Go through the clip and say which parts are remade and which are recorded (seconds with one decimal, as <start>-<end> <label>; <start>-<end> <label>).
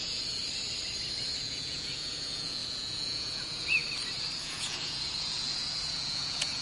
0.0-0.4 remade; 0.4-1.4 recorded; 1.4-3.8 remade; 3.8-4.4 recorded; 4.4-6.6 remade